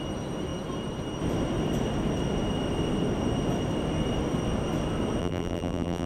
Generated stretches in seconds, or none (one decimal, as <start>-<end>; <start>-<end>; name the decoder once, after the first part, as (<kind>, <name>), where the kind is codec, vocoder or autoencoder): 5.2-6.1 (vocoder, BigVGAN v2)